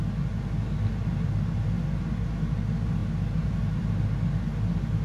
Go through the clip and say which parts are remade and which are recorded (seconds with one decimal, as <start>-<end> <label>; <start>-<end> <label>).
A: 0.0-5.0 recorded